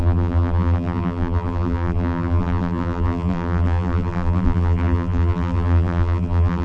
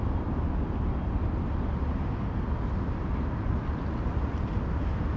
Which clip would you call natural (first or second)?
second